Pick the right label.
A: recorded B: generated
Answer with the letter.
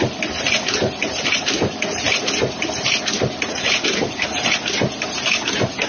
A